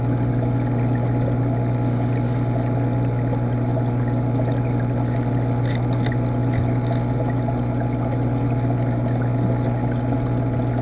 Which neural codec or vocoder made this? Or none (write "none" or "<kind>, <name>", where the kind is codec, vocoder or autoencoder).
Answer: none